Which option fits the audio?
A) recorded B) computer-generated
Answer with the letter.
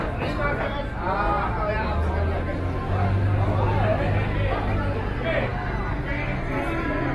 A